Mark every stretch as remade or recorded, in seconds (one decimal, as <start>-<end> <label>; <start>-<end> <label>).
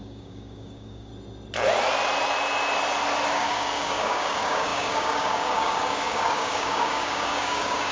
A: 0.0-1.1 remade; 1.1-3.3 recorded; 3.3-7.9 remade